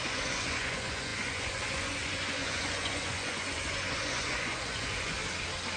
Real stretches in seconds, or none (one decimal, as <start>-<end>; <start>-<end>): 5.2-5.8